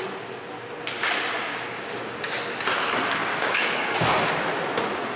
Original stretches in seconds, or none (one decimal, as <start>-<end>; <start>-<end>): 0.0-1.4; 2.4-3.2; 4.2-5.2